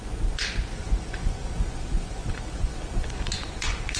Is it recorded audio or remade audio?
remade